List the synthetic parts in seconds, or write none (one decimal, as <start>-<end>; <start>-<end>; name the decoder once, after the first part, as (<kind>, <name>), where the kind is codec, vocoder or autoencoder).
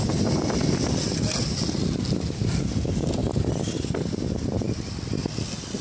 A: 3.2-4.8 (vocoder, BigVGAN v2)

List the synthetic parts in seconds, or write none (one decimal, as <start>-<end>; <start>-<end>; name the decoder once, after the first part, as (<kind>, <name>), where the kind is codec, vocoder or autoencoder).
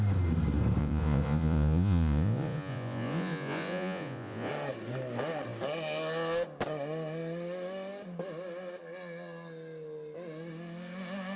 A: 0.8-4.5 (vocoder, Vocos)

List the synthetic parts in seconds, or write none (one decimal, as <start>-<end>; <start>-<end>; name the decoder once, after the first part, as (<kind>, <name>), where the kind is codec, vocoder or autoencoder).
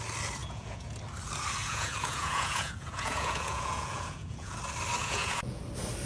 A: 0.4-1.0 (vocoder, Vocos); 1.6-4.6; 5.0-5.6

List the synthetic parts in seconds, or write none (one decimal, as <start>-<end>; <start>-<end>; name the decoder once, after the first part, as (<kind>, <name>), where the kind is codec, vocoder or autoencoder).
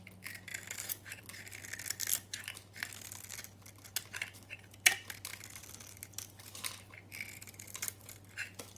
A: none